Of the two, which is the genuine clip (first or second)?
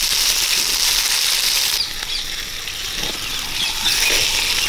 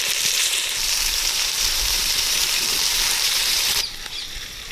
first